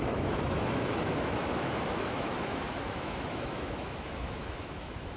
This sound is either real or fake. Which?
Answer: fake